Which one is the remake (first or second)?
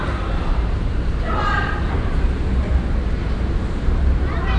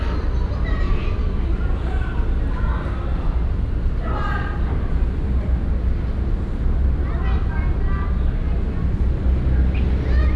first